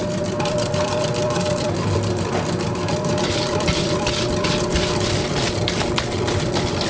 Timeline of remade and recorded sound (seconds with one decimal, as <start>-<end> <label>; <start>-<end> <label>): 0.0-4.0 remade; 4.0-6.9 recorded